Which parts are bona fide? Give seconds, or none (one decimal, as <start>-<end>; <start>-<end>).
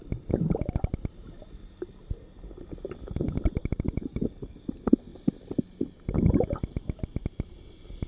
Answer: 0.0-3.6; 4.6-8.1